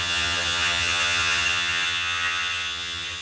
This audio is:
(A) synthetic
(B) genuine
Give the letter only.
A